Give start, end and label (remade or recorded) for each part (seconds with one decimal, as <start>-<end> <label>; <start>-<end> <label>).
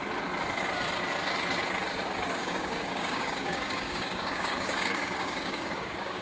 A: 0.0-2.4 recorded; 2.4-6.2 remade